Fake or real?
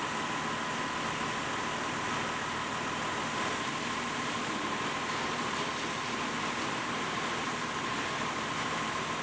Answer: real